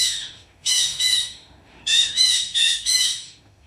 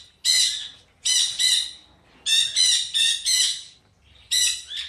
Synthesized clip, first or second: first